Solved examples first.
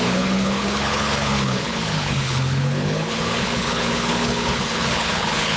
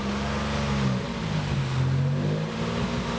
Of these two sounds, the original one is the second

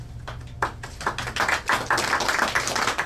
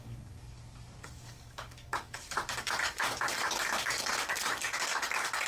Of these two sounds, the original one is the first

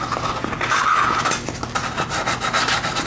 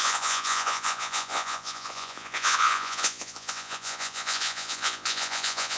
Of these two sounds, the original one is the first